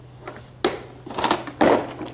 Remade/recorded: recorded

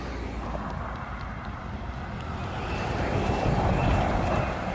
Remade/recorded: recorded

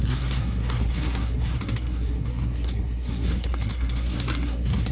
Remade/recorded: remade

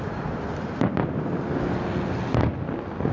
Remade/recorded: recorded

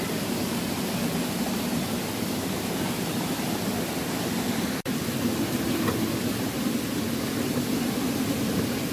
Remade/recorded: recorded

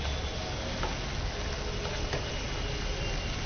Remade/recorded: recorded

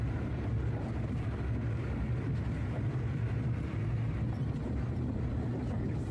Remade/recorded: recorded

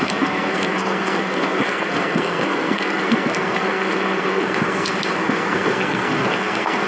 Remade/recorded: remade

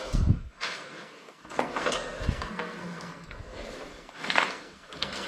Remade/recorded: remade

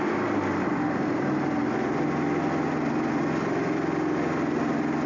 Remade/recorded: recorded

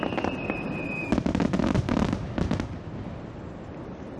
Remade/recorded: recorded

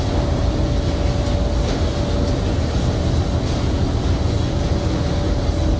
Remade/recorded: recorded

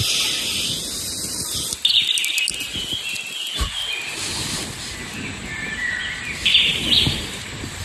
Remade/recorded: recorded